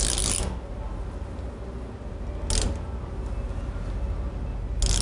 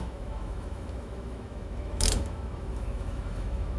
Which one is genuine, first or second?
first